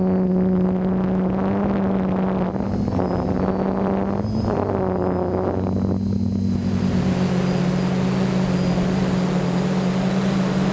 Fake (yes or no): no